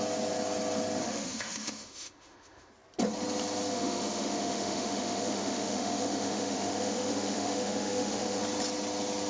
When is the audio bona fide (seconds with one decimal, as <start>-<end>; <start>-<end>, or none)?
0.0-1.0; 2.7-3.7; 8.4-9.3